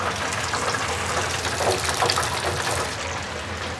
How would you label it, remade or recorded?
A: recorded